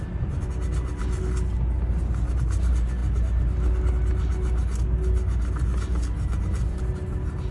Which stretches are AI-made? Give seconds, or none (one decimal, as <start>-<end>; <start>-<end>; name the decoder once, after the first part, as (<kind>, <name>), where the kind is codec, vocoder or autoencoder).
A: none